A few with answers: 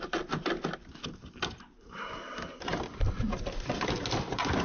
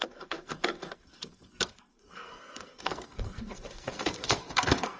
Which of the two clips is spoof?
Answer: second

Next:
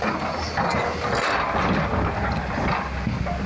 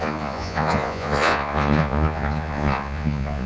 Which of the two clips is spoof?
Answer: second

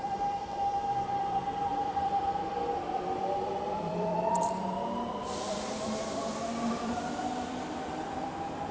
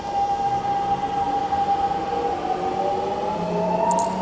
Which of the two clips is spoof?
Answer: first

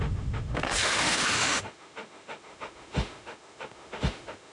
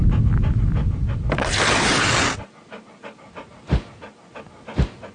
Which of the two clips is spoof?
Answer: first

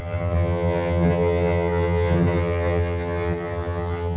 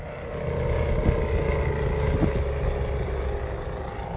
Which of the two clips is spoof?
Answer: first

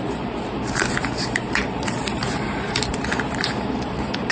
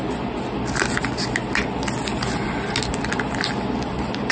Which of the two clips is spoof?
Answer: first